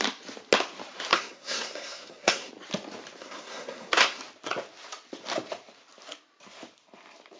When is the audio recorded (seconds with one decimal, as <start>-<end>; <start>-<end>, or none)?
0.0-1.1; 2.5-3.2; 4.2-7.4